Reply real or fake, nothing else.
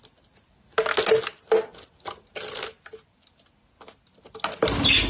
real